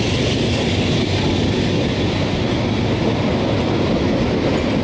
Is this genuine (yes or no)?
yes